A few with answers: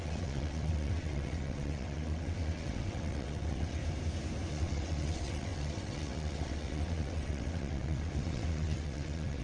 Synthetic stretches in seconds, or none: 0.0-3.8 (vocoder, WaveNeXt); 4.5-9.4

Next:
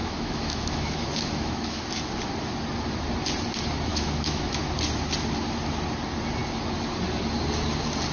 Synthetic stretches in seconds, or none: 0.0-1.8 (autoencoder, DAC-VAE); 3.9-4.6

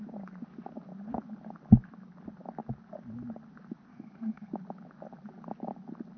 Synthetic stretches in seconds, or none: 3.9-4.5 (codec, SNAC)

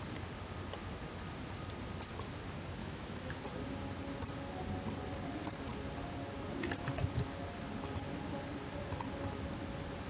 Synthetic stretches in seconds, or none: 2.8-3.4 (autoencoder, DAC-VAE)

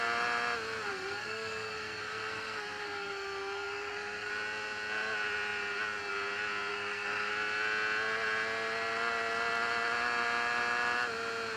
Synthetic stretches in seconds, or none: 0.9-4.3 (codec, SNAC); 6.7-7.3